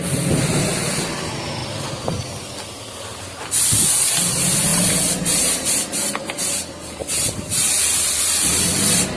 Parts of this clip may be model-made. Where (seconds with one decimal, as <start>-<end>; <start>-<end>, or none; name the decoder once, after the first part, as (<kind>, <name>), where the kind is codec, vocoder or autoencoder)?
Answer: 4.7-5.7 (vocoder, BigVGAN v2); 7.0-8.7